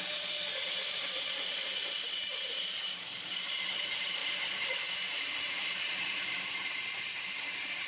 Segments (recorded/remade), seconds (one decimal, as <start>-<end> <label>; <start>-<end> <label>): 0.0-2.3 remade; 2.3-2.8 recorded; 2.8-7.9 remade